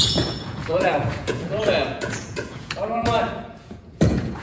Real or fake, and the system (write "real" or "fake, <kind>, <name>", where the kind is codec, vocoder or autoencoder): fake, vocoder, Vocos